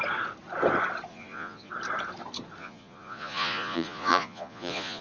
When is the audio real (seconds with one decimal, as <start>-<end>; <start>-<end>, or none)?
0.0-1.1; 1.7-2.6